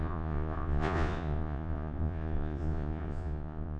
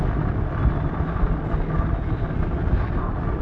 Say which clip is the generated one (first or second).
first